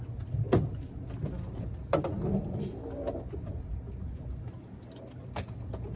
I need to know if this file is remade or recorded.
recorded